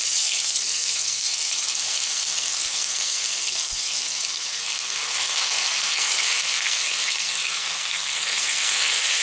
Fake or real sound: fake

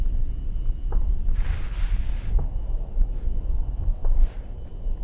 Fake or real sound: real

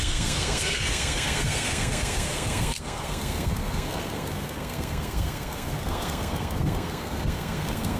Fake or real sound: fake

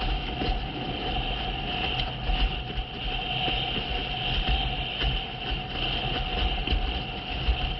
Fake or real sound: real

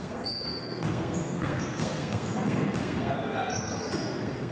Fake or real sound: fake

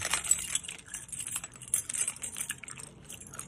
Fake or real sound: real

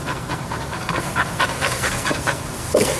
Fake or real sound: fake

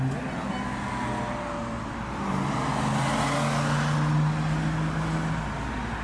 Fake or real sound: real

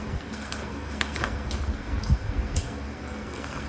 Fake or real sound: fake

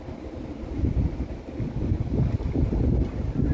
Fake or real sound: real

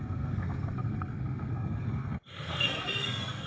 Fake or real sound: fake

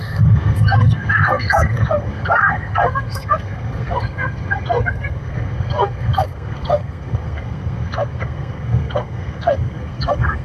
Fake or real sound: fake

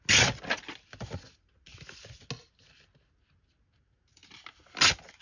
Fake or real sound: real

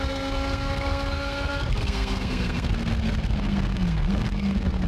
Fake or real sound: fake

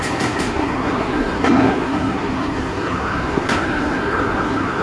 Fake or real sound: fake